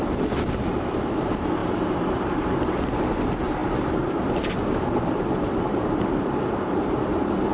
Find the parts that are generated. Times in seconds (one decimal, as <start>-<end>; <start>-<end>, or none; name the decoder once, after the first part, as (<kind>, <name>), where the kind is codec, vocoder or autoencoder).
0.0-7.5 (vocoder, BigVGAN v2)